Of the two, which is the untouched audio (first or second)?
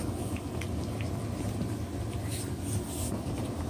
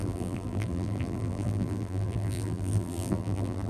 first